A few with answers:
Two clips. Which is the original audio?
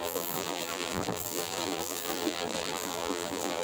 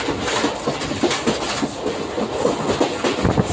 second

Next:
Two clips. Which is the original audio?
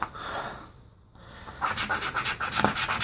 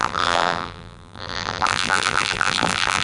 first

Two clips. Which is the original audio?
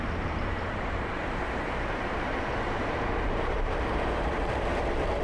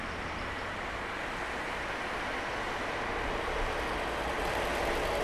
second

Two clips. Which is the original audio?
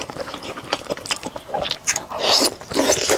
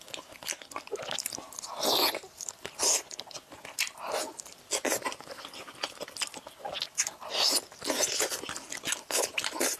second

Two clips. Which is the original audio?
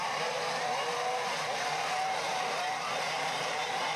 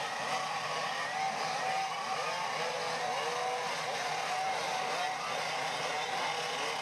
second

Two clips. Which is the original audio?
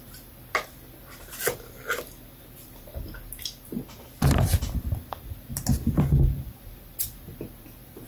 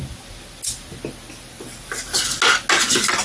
second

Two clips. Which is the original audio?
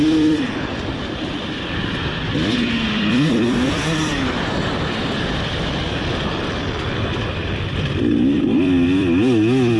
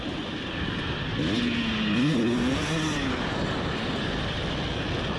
second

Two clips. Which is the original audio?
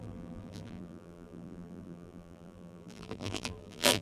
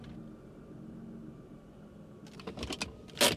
second